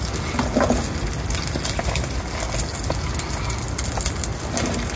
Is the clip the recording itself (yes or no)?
yes